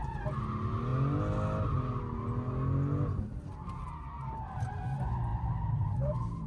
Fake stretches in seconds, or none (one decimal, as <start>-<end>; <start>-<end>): none